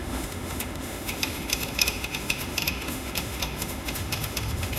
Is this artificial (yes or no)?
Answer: yes